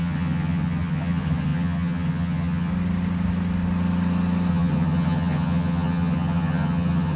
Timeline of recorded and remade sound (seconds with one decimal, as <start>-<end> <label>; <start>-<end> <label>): 0.0-2.7 remade; 2.7-4.5 recorded; 4.5-7.2 remade